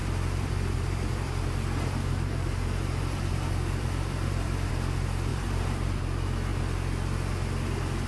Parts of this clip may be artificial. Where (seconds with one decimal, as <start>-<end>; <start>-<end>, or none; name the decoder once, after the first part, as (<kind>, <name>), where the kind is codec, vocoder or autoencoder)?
0.0-4.7 (vocoder, BigVGAN v2); 5.3-6.0